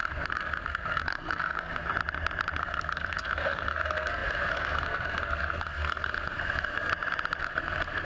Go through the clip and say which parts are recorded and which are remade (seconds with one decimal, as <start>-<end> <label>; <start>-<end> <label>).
0.0-1.9 remade; 1.9-2.6 recorded; 2.6-6.9 remade; 6.9-7.4 recorded; 7.4-8.0 remade